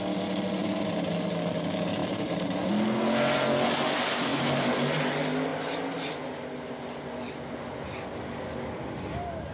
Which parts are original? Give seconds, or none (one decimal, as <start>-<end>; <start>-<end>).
0.0-0.6; 1.1-2.0; 2.7-4.3; 5.1-9.5